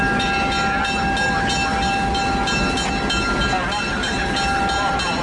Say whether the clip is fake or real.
real